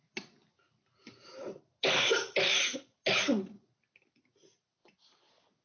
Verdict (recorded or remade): recorded